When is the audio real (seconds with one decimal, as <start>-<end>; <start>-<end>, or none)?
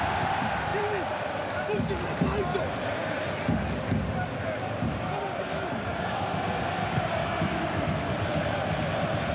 3.0-4.9